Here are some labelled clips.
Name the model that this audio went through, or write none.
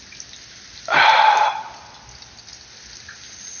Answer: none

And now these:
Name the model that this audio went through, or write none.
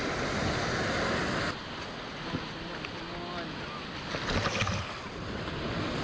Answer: none